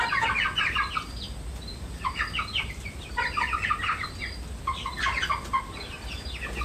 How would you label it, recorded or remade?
recorded